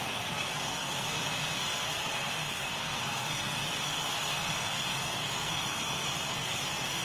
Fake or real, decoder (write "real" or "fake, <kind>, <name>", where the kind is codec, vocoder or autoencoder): fake, codec, SNAC